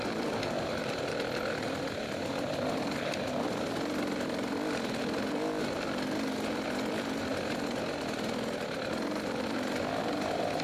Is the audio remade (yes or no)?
no